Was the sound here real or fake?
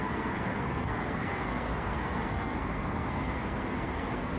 fake